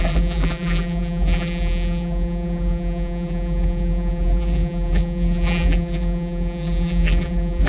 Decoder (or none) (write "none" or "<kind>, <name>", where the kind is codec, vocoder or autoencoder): vocoder, BigVGAN v2